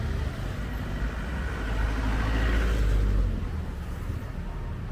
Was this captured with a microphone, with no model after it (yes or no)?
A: yes